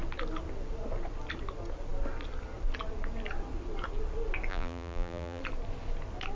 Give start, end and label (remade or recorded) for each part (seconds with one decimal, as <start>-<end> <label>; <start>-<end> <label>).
0.0-4.5 recorded; 4.5-5.4 remade; 5.4-6.3 recorded